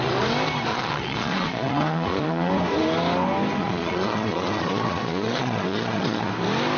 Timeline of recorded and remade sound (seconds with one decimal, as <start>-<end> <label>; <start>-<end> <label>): 0.0-0.7 recorded; 0.7-2.5 remade; 2.5-3.6 recorded; 3.6-6.3 remade; 6.3-6.8 recorded